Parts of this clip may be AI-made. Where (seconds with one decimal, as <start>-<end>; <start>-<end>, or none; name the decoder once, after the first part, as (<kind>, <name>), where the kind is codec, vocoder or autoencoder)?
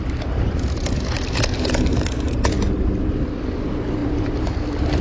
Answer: none